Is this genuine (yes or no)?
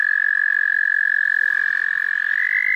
yes